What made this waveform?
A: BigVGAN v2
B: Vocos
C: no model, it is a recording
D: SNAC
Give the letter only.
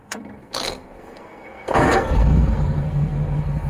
D